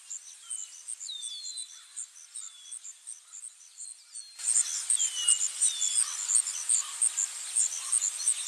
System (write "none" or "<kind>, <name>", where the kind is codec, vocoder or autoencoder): none